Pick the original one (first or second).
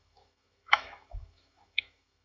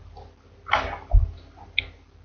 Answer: second